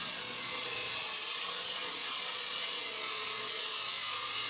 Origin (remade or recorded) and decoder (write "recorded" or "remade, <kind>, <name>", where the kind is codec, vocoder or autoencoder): remade, vocoder, Vocos